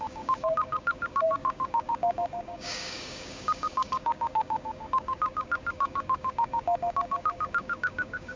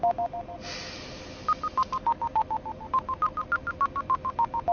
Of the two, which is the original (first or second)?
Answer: second